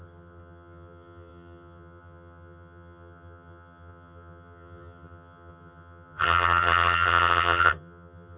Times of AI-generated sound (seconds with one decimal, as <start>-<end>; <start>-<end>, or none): 0.0-8.4